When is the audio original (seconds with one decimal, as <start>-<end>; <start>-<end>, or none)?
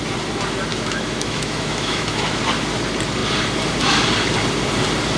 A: 0.0-0.7; 2.4-5.2